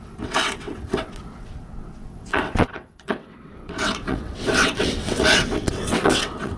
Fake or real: fake